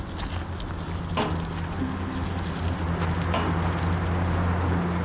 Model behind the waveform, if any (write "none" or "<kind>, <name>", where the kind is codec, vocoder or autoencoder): none